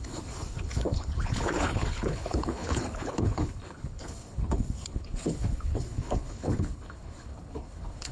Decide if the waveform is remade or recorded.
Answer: remade